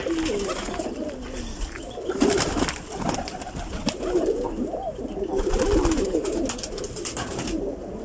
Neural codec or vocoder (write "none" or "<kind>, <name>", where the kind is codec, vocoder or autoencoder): none